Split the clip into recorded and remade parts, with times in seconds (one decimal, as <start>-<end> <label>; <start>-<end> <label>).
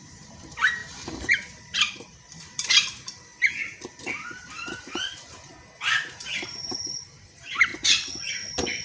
0.0-3.3 remade; 3.3-4.0 recorded; 4.0-5.5 remade; 5.5-6.1 recorded; 6.1-7.7 remade; 7.7-8.3 recorded; 8.3-8.8 remade